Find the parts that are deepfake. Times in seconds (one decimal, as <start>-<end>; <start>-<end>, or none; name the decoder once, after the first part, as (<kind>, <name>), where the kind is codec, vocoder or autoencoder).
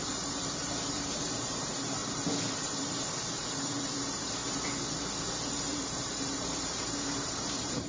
0.0-2.0 (vocoder, BigVGAN v2); 2.8-4.4; 5.5-7.9